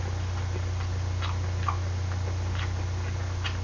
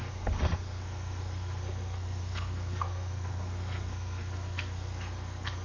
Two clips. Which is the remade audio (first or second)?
second